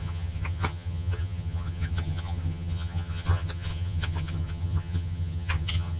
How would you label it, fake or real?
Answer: fake